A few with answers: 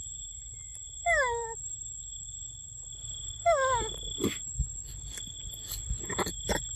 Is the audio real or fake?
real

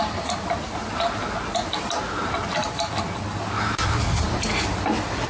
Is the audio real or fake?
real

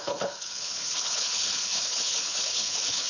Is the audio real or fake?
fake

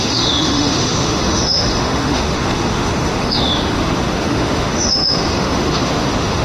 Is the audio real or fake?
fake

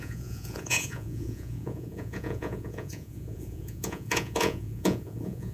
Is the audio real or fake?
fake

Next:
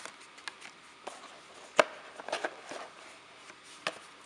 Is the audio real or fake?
real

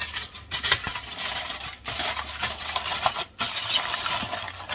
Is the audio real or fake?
real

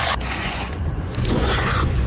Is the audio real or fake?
fake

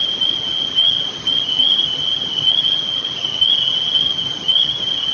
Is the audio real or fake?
fake